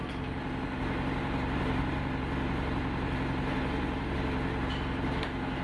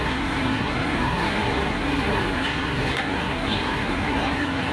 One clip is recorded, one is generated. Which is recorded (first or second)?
first